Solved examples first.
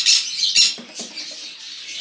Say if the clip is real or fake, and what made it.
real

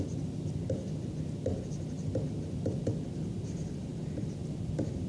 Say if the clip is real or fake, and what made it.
real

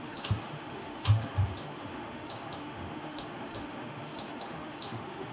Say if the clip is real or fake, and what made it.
fake, autoencoder, DAC-VAE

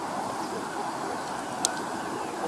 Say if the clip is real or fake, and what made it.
real